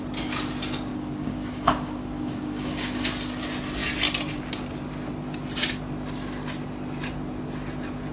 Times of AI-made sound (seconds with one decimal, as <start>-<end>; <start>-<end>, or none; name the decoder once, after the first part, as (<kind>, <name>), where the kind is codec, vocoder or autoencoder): 0.9-3.1 (codec, DAC)